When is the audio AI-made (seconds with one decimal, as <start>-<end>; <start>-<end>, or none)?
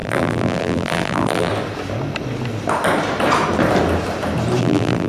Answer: 0.0-1.5; 4.6-5.1